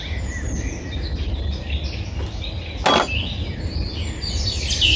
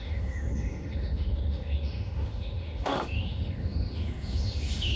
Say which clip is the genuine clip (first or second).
first